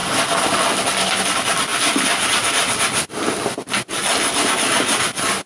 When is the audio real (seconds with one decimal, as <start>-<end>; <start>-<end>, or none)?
0.0-5.5